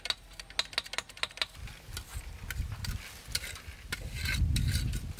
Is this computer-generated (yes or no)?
no